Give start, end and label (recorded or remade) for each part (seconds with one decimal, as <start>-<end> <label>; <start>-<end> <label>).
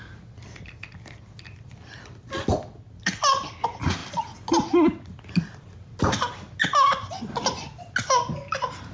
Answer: 0.0-8.9 recorded